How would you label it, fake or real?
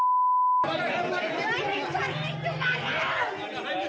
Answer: real